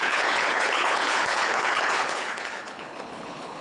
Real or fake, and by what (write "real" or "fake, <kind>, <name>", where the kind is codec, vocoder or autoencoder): fake, codec, HILCodec